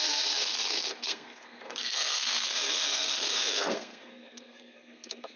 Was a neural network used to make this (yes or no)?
yes